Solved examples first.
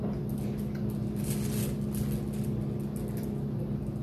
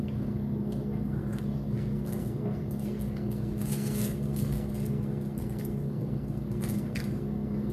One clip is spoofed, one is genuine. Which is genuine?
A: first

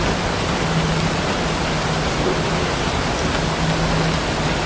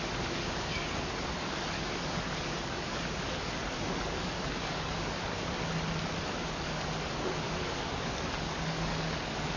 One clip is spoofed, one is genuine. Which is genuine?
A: first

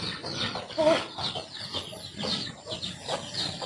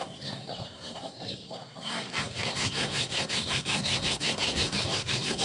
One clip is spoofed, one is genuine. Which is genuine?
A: first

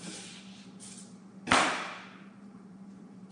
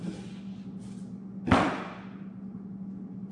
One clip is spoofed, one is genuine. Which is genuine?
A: second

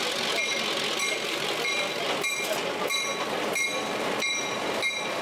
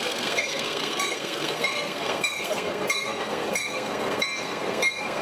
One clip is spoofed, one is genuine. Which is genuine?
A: first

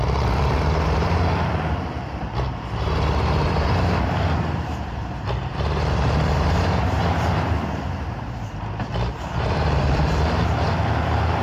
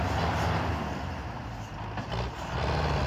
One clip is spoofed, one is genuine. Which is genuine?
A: second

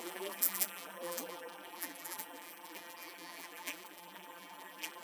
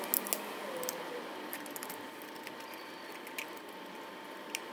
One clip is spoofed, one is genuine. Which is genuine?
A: second